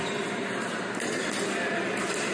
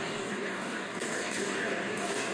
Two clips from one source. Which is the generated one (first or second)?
second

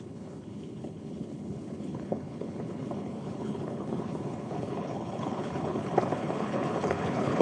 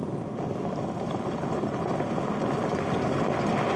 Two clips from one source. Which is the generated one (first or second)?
first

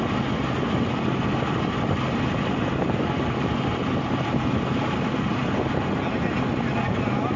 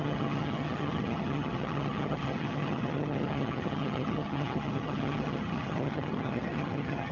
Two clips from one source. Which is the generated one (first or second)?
second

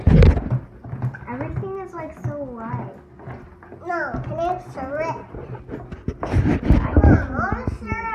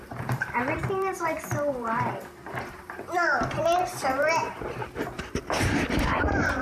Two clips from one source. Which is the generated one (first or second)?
second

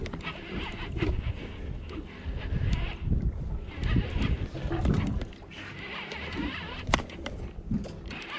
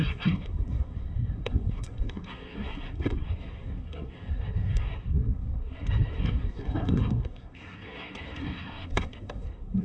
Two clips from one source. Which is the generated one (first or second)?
second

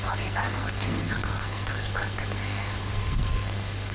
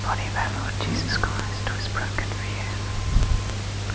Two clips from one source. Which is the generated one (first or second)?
first